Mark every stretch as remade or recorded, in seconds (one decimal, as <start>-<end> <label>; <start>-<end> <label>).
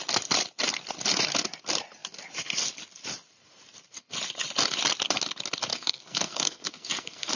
0.0-5.7 recorded; 5.7-7.3 remade